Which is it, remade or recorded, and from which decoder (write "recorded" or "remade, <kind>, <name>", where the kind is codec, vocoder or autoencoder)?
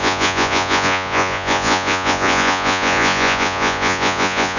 remade, vocoder, Vocos